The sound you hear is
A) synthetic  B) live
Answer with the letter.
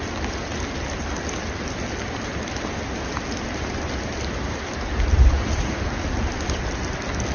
B